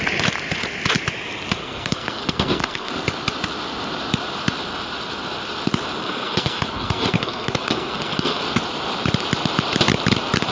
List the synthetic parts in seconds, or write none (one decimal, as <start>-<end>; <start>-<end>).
1.6-2.9; 6.0-8.4

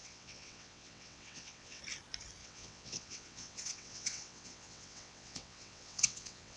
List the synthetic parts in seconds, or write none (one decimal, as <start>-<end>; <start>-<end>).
0.0-1.8; 2.4-6.6

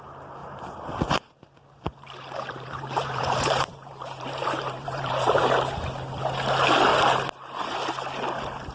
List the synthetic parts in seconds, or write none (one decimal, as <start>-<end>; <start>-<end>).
0.4-5.4

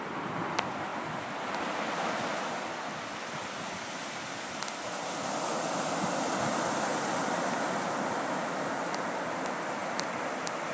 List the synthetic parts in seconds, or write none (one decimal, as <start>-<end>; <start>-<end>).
6.9-7.6; 9.8-10.7

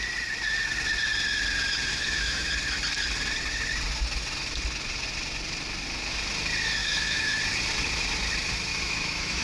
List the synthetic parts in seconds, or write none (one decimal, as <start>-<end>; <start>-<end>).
1.9-2.5; 6.8-7.4; 8.7-9.4

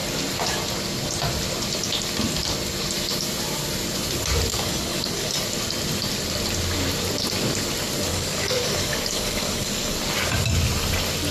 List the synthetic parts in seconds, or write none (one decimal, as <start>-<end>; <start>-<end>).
4.5-5.3; 8.1-10.0